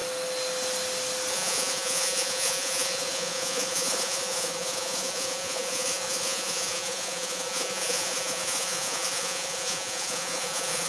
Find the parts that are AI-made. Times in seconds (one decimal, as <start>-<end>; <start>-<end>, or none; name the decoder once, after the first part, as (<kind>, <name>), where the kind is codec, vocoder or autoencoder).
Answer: 1.3-10.9 (vocoder, Vocos)